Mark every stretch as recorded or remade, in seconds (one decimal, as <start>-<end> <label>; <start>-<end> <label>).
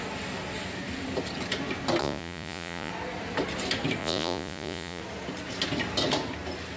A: 0.0-2.0 recorded; 2.0-2.9 remade; 2.9-4.0 recorded; 4.0-5.0 remade; 5.0-6.8 recorded